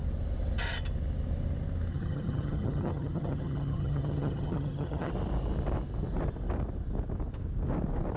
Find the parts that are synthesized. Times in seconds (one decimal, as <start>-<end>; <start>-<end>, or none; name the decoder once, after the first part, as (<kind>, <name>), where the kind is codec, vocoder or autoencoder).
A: 1.9-5.1 (vocoder, HiFi-GAN)